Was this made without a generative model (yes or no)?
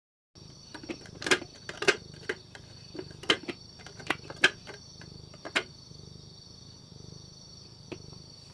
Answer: yes